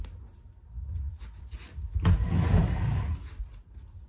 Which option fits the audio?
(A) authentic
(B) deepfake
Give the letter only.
A